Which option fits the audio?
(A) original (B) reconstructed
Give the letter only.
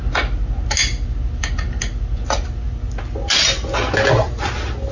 A